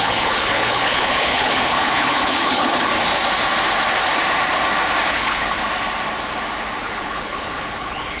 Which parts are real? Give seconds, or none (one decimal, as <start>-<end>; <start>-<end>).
2.9-5.1; 5.6-6.8